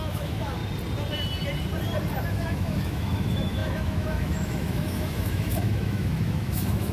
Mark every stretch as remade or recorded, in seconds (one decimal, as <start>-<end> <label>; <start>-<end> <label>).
0.0-0.6 remade; 0.6-2.2 recorded; 2.2-6.9 remade